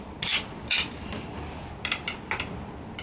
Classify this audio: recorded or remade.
recorded